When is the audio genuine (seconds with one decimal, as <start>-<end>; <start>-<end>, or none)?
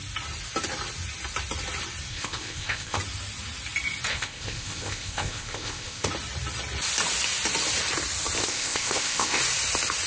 0.0-2.1; 3.0-4.1; 6.1-8.4; 9.4-10.1